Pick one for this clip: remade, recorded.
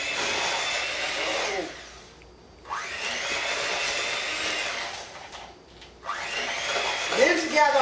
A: recorded